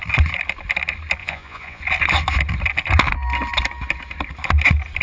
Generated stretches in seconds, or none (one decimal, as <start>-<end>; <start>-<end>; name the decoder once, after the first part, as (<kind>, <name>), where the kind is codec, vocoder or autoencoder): 1.2-1.8 (vocoder, Vocos)